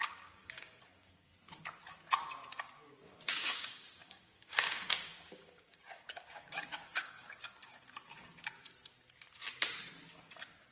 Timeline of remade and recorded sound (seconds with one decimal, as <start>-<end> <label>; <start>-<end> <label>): 0.0-1.3 remade; 1.3-2.6 recorded; 2.6-7.6 remade; 7.6-10.7 recorded